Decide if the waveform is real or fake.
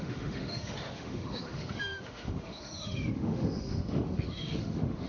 fake